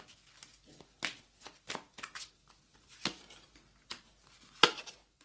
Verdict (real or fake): real